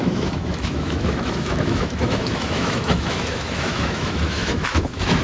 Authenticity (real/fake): fake